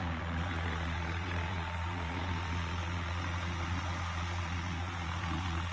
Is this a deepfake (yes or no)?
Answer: yes